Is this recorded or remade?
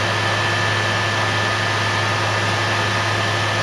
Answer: recorded